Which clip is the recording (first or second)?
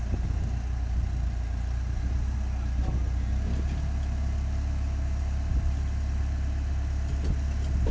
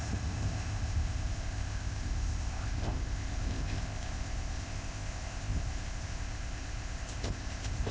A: first